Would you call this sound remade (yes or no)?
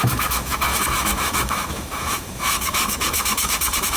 yes